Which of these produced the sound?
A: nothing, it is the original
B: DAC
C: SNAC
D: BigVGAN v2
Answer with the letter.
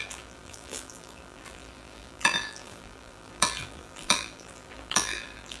D